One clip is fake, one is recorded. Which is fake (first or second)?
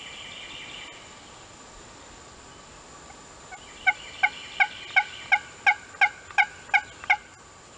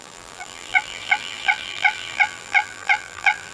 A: second